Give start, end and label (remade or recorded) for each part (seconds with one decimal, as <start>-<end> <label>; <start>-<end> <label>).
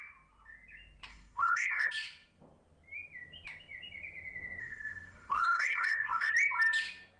0.0-1.1 recorded; 1.1-1.9 remade; 1.9-4.6 recorded; 4.6-6.3 remade; 6.3-7.2 recorded